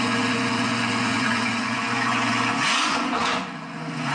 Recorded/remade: remade